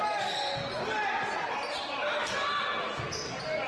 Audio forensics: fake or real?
real